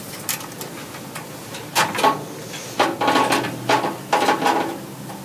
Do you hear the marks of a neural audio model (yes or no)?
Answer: no